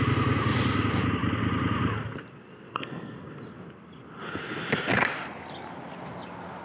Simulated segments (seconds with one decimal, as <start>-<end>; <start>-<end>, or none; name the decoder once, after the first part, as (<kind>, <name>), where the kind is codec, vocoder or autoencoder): 2.7-3.3 (codec, SNAC)